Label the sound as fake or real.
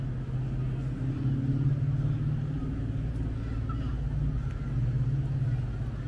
real